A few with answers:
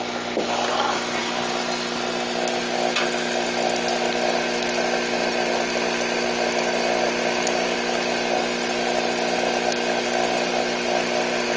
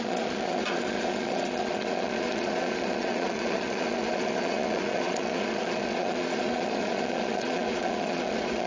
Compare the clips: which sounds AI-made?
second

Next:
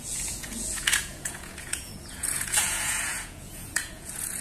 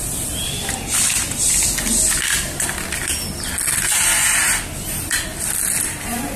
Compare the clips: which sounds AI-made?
first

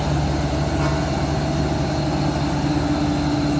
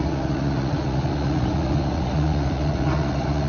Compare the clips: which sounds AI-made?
second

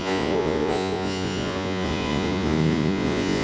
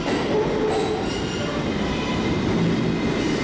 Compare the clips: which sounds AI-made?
first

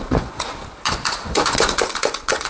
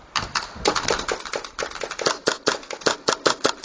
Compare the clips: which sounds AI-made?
first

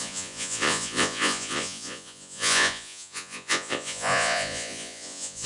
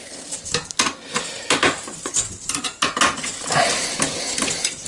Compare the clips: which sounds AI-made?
first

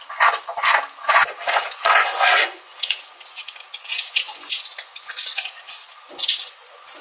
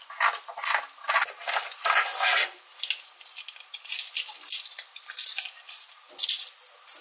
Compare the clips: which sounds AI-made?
first